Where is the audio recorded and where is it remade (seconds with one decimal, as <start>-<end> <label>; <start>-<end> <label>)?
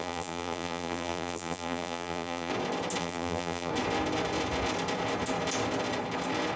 0.0-2.5 remade; 2.5-3.0 recorded; 3.0-3.7 remade; 3.7-6.6 recorded